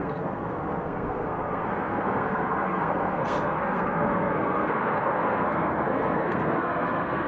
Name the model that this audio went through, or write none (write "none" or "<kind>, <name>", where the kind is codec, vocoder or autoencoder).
codec, SNAC